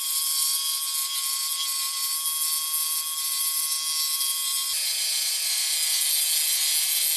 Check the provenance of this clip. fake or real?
real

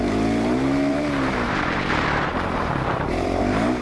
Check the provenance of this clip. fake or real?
fake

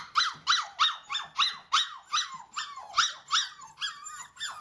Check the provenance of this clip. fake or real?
real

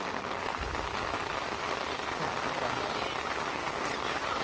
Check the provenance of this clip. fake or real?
real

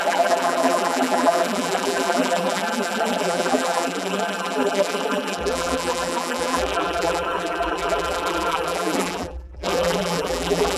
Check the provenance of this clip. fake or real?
fake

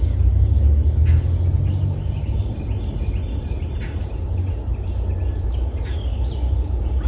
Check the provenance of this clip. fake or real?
real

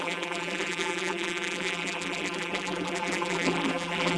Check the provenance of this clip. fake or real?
fake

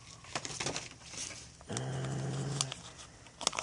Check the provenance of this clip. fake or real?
real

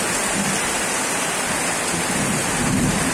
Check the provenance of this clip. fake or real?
fake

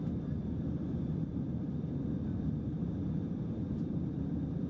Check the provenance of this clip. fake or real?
fake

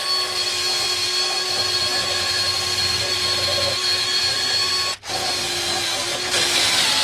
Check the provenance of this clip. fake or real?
real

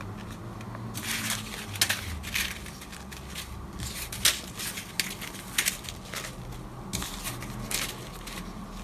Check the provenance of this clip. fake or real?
real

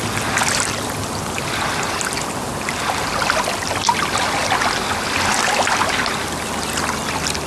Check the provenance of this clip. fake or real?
real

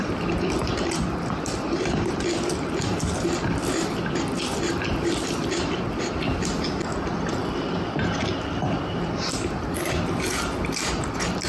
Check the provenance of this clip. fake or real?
fake